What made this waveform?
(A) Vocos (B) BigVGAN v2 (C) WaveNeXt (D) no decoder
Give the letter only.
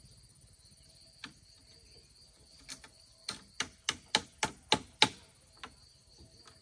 D